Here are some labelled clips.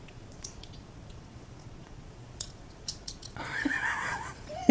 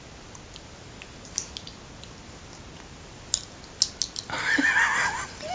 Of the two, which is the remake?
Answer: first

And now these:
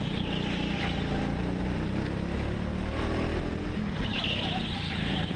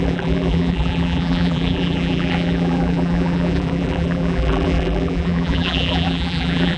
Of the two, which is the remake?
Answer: second